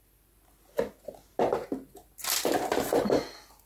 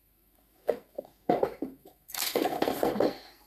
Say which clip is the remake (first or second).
second